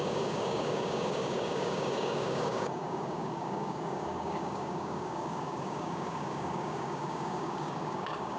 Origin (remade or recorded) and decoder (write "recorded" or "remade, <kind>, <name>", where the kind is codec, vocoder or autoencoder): remade, codec, DAC